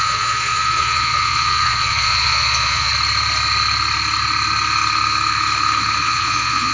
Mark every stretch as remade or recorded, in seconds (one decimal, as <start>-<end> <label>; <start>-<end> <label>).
0.0-2.9 remade; 2.9-6.0 recorded; 6.0-6.7 remade